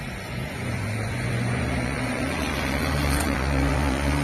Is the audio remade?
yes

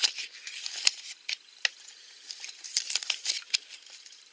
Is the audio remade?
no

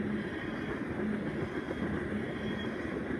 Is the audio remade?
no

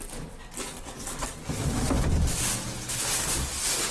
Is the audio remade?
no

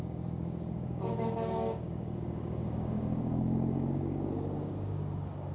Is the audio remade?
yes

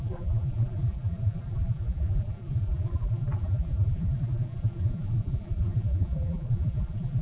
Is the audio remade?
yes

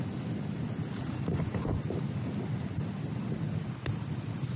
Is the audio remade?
no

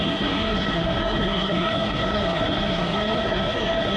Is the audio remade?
yes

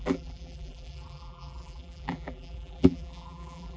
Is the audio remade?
yes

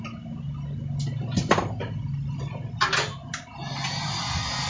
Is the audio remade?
no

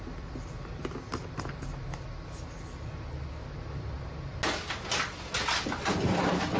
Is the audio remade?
no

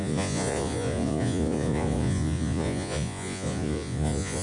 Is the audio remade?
yes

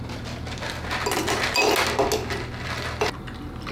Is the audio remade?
no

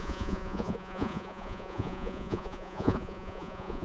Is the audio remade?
yes